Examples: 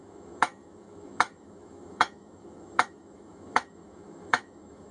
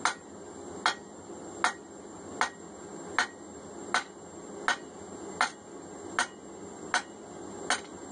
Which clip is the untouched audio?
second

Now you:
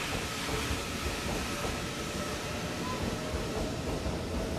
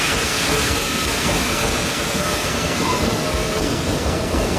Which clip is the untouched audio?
first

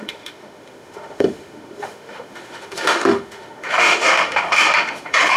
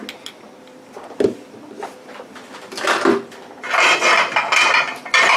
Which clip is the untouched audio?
second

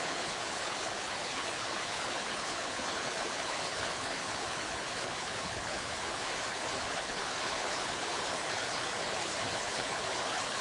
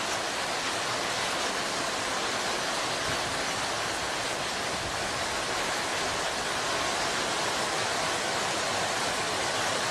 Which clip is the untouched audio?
second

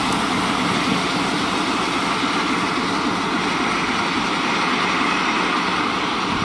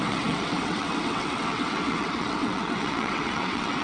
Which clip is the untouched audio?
first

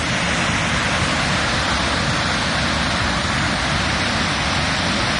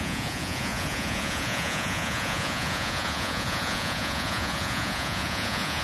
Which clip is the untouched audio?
first